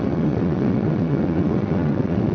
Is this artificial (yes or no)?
yes